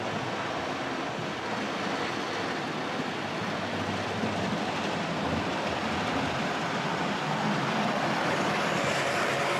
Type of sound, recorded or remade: recorded